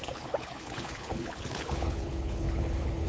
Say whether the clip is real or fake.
fake